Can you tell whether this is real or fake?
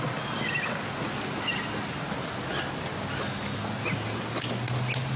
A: real